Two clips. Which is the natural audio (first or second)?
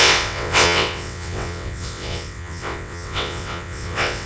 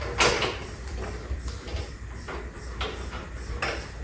second